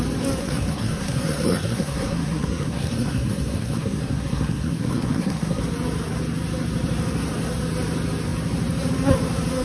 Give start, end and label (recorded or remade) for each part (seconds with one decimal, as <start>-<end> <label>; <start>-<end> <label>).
0.0-0.4 recorded; 0.4-5.6 remade; 5.6-9.6 recorded